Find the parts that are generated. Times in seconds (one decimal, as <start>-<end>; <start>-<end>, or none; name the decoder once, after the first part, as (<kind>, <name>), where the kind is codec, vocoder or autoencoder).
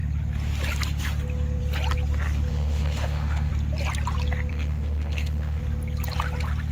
2.5-3.5 (autoencoder, DAC-VAE); 4.5-5.6